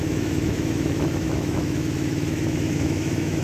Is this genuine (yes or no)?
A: no